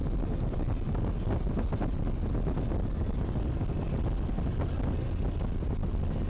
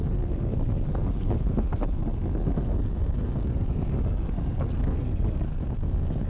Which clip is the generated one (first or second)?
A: second